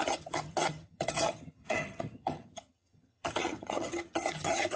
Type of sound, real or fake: fake